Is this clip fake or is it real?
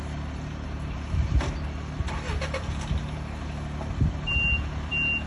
real